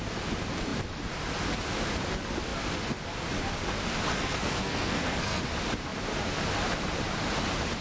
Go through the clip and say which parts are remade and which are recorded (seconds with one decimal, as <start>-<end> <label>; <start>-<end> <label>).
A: 0.0-4.1 recorded; 4.1-5.4 remade; 5.4-7.8 recorded

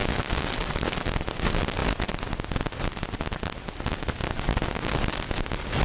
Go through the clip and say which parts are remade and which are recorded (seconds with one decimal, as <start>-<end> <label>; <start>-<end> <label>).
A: 0.0-5.8 recorded

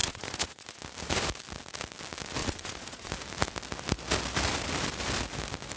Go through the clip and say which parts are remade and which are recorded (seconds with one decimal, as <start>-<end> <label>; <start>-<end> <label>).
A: 0.0-0.8 remade; 0.8-2.4 recorded; 2.4-3.1 remade; 3.1-5.8 recorded

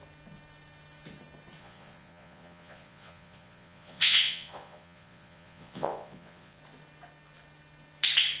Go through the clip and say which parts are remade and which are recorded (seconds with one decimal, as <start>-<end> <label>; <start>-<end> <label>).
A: 0.0-1.6 recorded; 1.6-6.6 remade; 6.6-8.4 recorded

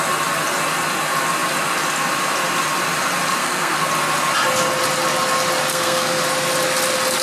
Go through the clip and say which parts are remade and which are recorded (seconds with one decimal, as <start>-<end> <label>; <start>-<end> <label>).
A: 0.0-3.4 recorded; 3.4-3.9 remade; 3.9-5.7 recorded; 5.7-6.2 remade; 6.2-7.2 recorded

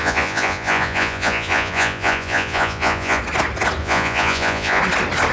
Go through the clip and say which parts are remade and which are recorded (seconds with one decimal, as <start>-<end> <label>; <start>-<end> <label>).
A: 0.0-3.2 remade; 3.2-3.8 recorded; 3.8-4.8 remade; 4.8-5.3 recorded